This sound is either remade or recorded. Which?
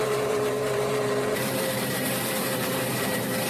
remade